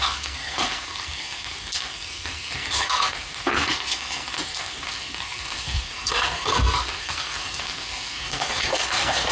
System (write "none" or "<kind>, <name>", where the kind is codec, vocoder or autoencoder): codec, SNAC